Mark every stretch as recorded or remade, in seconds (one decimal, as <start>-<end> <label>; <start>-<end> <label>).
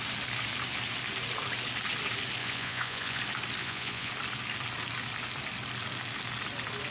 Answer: 0.0-2.4 recorded; 2.4-3.2 remade; 3.2-3.6 recorded; 3.6-4.1 remade; 4.1-6.9 recorded